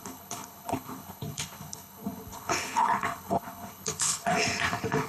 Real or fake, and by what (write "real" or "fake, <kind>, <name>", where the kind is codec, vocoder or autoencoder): fake, codec, HILCodec